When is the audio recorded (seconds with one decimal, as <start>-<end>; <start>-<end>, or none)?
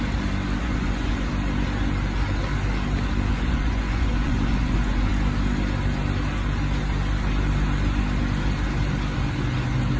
0.0-0.6; 1.3-3.3; 5.1-10.0